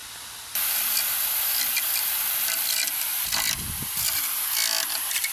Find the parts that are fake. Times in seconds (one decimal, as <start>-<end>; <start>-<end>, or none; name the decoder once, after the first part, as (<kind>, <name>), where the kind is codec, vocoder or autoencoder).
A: none